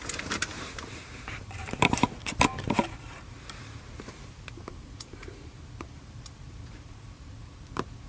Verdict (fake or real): fake